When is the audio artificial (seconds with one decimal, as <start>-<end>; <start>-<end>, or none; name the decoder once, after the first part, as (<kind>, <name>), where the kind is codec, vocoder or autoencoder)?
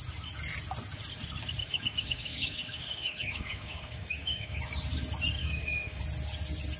1.6-4.6 (codec, DAC); 5.4-6.0